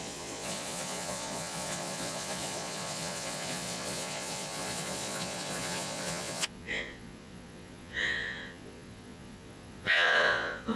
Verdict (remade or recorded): remade